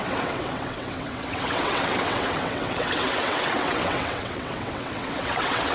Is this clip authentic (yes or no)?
no